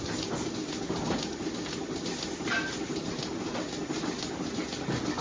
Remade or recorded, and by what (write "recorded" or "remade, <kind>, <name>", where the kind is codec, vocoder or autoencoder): recorded